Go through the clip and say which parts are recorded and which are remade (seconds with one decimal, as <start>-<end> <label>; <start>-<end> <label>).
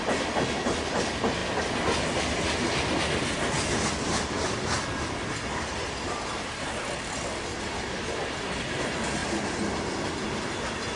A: 0.0-11.0 recorded